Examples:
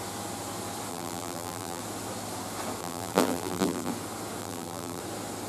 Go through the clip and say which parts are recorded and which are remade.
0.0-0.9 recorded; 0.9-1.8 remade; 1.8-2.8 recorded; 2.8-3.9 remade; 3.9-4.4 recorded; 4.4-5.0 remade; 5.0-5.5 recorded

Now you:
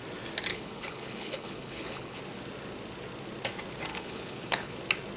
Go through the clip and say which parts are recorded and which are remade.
0.0-0.5 recorded; 0.5-2.2 remade; 2.2-3.9 recorded; 3.9-4.8 remade; 4.8-5.2 recorded

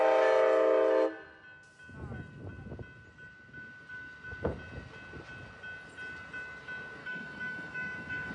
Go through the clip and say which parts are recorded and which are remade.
0.0-7.0 recorded; 7.0-8.3 remade